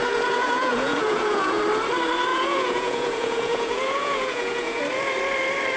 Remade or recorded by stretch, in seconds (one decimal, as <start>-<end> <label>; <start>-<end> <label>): 0.0-1.6 remade; 1.6-2.3 recorded; 2.3-4.8 remade; 4.8-5.8 recorded